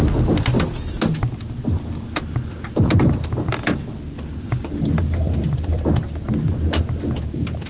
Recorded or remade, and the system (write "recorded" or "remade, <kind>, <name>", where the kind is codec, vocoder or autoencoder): recorded